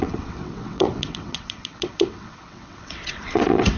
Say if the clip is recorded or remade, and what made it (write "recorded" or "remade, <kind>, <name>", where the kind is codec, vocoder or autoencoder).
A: remade, vocoder, WaveNeXt